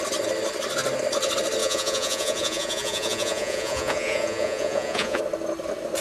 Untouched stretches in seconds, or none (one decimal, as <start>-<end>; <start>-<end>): 0.0-1.6; 5.2-6.0